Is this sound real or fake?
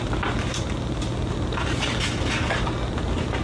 real